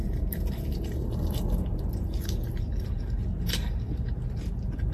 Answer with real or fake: fake